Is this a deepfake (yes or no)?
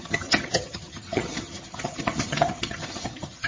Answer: yes